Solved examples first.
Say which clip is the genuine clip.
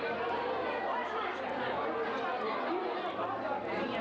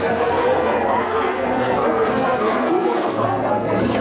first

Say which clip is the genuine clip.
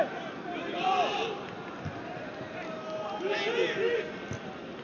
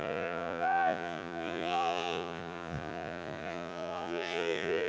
first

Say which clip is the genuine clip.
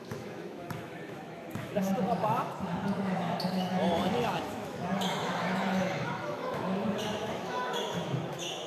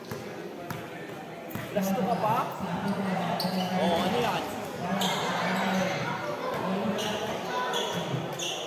second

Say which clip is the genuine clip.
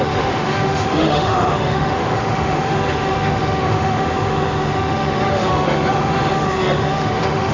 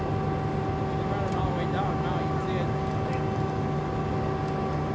second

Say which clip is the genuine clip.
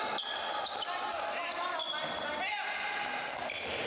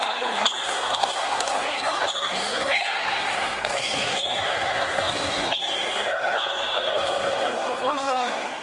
first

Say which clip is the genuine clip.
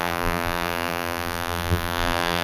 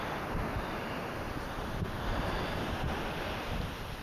second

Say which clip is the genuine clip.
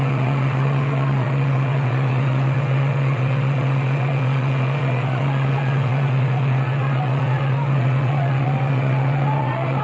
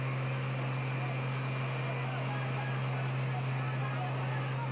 second